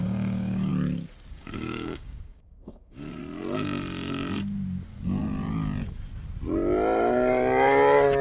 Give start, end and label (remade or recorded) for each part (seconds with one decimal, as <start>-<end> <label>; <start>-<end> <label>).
0.0-0.7 remade; 0.7-1.3 recorded; 1.3-3.2 remade; 3.2-8.2 recorded